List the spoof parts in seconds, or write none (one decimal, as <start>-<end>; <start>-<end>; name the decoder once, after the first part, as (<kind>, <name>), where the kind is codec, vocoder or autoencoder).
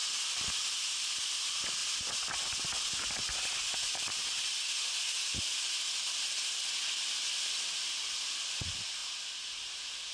none